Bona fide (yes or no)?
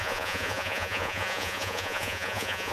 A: no